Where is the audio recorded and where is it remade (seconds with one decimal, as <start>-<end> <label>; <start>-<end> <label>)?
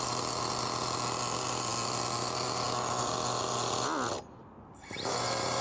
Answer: 0.0-5.6 recorded